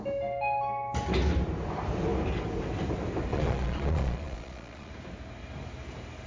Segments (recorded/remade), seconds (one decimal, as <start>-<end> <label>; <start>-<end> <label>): 0.0-3.3 recorded; 3.3-4.9 remade; 4.9-6.3 recorded